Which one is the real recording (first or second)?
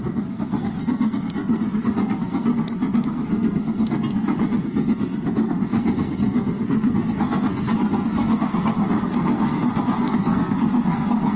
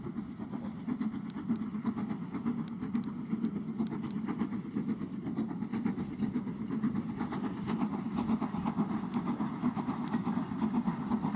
second